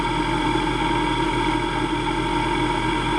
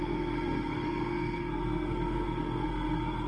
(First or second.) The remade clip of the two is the second